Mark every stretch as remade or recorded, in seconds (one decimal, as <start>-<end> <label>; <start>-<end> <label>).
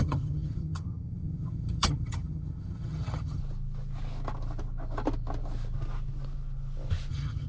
0.0-3.4 remade; 3.4-7.1 recorded; 7.1-7.5 remade